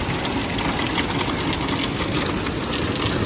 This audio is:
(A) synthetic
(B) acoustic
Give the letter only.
B